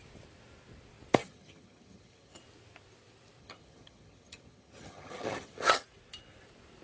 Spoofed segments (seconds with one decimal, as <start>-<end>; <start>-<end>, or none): 1.2-2.4; 3.4-5.8